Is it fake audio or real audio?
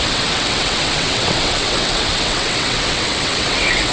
fake